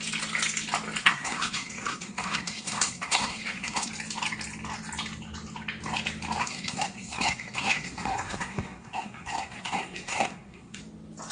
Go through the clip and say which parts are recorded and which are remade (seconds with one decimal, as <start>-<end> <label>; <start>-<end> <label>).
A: 0.0-1.0 recorded; 1.0-3.9 remade; 3.9-6.4 recorded; 6.4-10.8 remade; 10.8-11.3 recorded